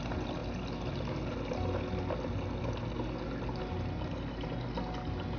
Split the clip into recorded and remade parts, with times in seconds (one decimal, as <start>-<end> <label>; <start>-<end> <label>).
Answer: 0.0-5.4 recorded